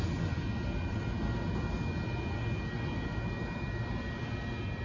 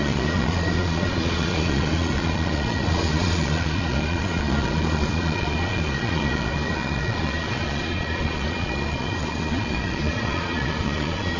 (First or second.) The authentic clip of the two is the first